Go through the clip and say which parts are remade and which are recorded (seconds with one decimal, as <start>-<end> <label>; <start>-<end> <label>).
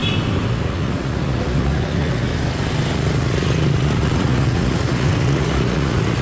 0.0-0.5 recorded; 0.5-2.3 remade; 2.3-2.9 recorded; 2.9-6.2 remade